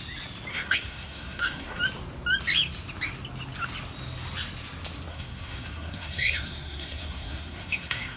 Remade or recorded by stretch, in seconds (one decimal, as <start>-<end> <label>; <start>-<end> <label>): 0.0-0.5 recorded; 0.5-1.8 remade; 1.8-5.1 recorded; 5.1-8.2 remade